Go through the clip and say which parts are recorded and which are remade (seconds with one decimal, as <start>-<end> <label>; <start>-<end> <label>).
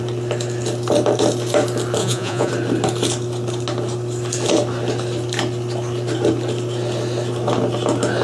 0.0-2.0 recorded; 2.0-2.5 remade; 2.5-8.2 recorded